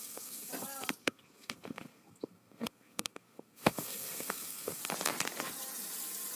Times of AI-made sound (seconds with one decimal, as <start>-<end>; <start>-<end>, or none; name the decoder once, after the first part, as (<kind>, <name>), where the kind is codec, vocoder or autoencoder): 0.0-0.5 (codec, SNAC); 1.0-4.8